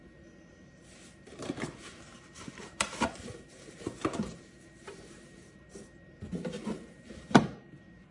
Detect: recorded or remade remade